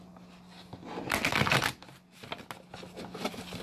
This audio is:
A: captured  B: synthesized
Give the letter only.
A